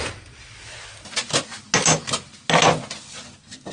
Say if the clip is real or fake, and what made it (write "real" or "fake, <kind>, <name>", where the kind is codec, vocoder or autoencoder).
real